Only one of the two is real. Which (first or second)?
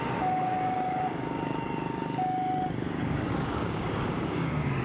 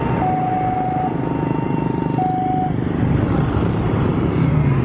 second